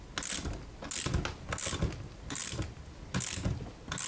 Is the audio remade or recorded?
recorded